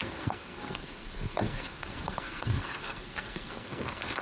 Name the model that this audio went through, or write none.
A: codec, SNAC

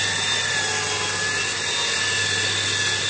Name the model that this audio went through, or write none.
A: none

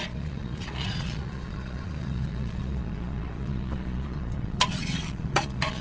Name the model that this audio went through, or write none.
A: vocoder, Vocos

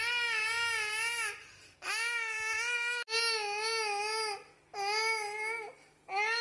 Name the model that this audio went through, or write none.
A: none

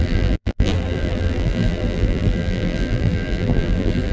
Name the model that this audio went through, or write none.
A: vocoder, BigVGAN v2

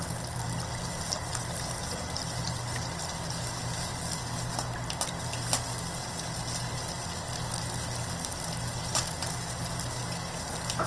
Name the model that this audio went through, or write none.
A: none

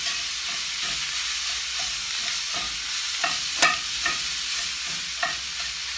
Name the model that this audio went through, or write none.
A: none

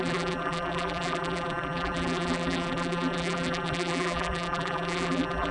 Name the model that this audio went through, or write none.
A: vocoder, BigVGAN v2